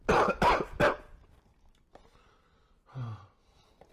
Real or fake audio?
real